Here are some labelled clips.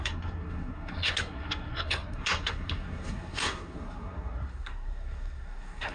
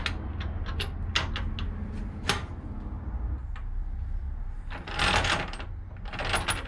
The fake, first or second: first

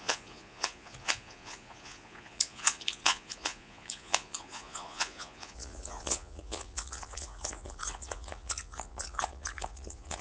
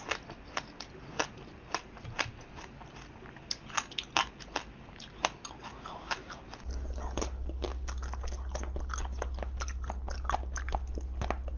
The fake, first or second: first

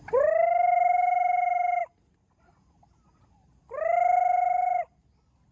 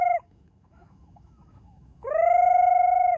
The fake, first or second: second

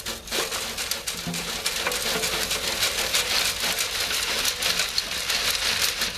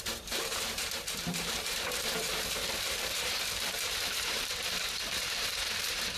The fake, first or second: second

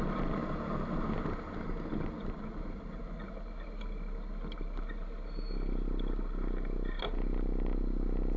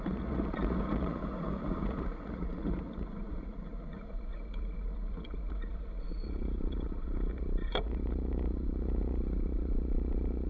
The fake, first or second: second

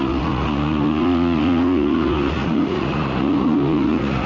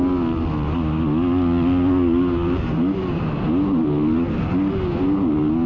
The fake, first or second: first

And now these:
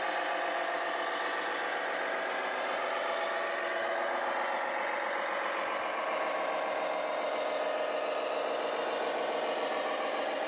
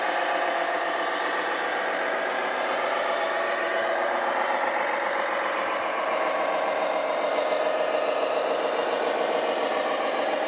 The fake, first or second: second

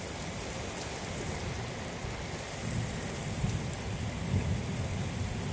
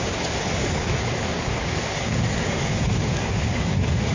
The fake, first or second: second